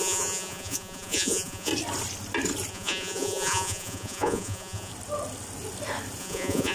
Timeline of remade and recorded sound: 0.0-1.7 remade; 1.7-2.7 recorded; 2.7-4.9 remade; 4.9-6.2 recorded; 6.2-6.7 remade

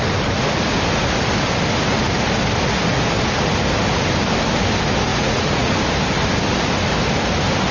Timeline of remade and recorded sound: 0.0-5.1 recorded; 5.1-5.8 remade; 5.8-7.7 recorded

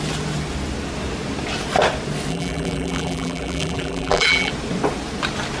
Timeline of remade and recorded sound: 0.0-2.3 recorded; 2.3-4.5 remade; 4.5-5.6 recorded

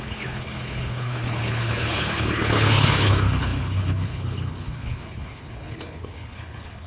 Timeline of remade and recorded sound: 0.0-6.9 remade

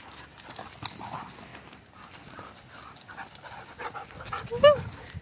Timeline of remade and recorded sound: 0.0-5.2 recorded

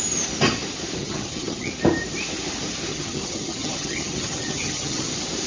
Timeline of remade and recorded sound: 0.0-1.0 recorded; 1.0-1.7 remade; 1.7-2.9 recorded; 2.9-5.1 remade; 5.1-5.5 recorded

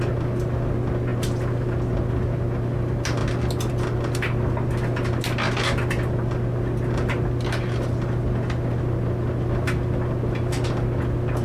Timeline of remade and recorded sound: 0.0-11.4 recorded

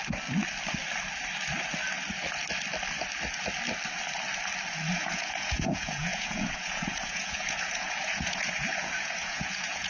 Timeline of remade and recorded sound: 0.0-4.9 recorded; 4.9-9.9 remade